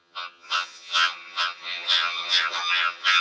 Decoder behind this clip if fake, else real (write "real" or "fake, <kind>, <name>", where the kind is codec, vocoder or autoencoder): fake, vocoder, HiFi-GAN